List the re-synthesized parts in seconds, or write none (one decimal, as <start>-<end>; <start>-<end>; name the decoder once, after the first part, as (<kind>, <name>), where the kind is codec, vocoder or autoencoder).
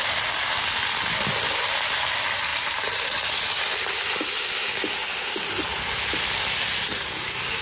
none